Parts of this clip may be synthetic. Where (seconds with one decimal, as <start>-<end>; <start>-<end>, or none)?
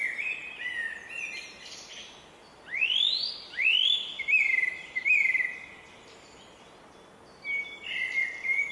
none